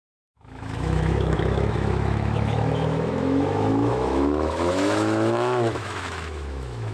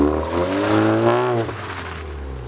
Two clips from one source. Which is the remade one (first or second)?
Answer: first